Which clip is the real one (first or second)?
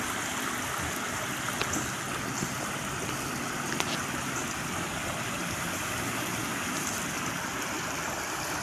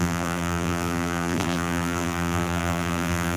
first